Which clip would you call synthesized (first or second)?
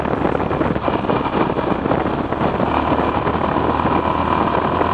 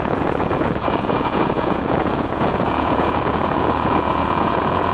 second